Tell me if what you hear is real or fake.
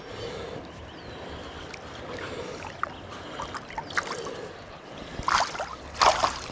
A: real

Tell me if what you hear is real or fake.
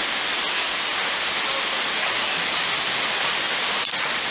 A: real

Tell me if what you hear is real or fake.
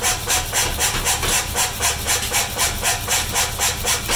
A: real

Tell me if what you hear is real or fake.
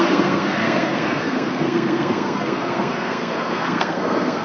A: fake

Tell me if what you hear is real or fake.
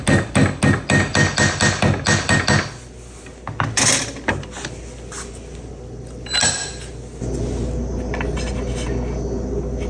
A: real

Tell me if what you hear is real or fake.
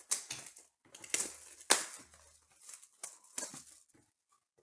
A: real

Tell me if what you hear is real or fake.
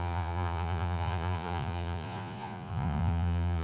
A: fake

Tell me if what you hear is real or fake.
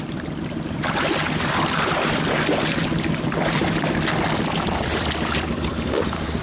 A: fake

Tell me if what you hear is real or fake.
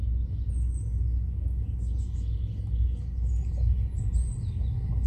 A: real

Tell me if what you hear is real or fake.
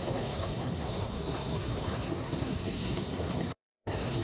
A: fake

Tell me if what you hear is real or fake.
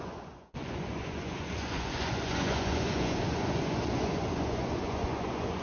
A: fake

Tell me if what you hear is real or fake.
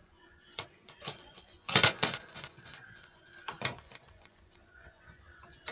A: fake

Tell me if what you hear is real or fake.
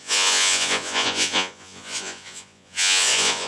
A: fake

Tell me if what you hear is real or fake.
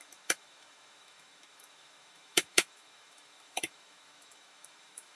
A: fake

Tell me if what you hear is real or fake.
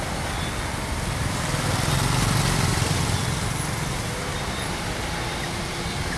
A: real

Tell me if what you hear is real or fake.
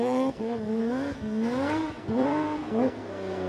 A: fake